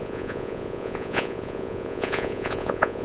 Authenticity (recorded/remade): remade